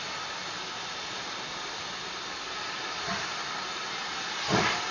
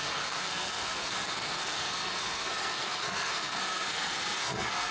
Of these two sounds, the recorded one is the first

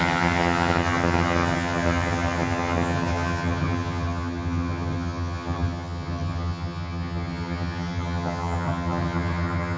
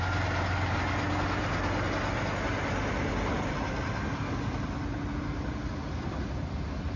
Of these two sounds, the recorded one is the second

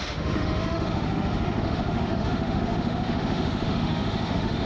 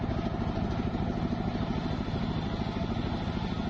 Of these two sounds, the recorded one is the second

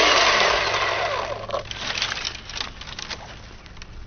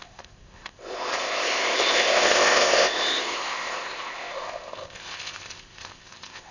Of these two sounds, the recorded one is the first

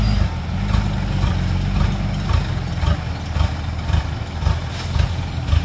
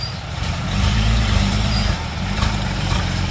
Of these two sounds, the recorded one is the first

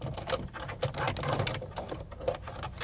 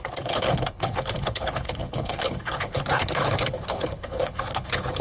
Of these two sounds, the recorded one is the first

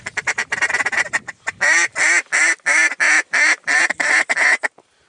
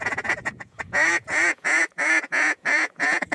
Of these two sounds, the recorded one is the first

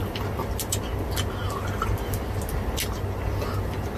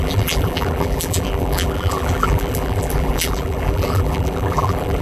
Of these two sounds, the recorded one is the first